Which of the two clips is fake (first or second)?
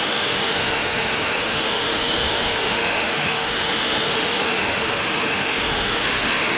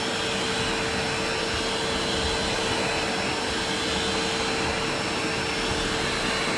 first